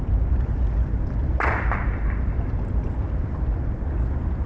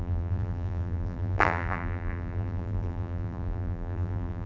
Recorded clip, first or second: first